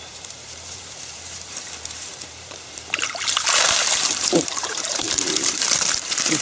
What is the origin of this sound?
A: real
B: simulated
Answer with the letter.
B